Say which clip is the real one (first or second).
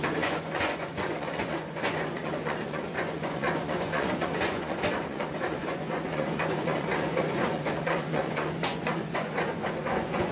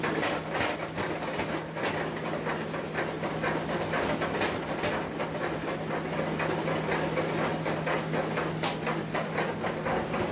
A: second